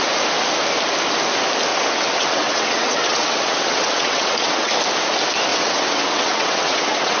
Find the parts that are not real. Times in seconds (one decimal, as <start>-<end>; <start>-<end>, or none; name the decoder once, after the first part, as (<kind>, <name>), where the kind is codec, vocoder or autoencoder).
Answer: 1.7-4.7 (vocoder, WaveNeXt); 5.5-7.2